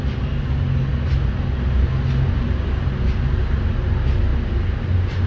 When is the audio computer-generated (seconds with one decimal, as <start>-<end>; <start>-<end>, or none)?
none